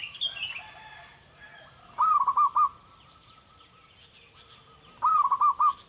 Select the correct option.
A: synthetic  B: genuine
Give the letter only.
B